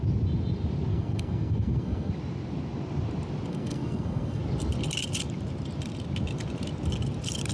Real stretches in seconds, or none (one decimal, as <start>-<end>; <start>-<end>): 0.0-0.9; 2.1-3.5; 4.4-7.5